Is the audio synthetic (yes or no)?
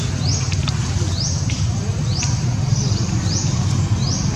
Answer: no